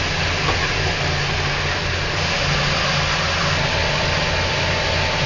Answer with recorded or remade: recorded